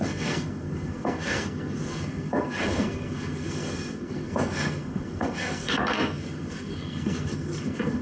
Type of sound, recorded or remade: remade